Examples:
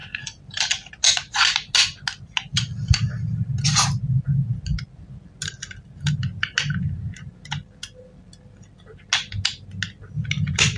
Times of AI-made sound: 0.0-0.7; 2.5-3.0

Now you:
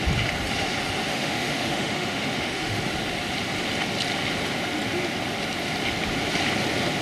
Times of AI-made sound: 1.1-2.8

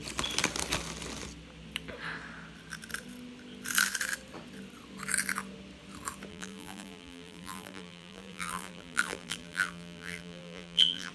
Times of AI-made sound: 6.3-11.1

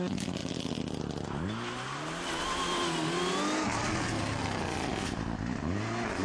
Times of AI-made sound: none

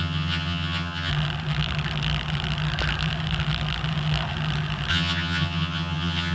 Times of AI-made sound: 0.0-1.1; 4.9-6.3

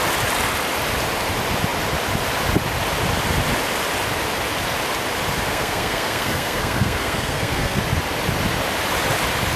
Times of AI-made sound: 5.5-7.8

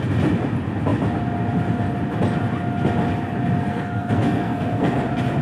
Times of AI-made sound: 3.6-5.0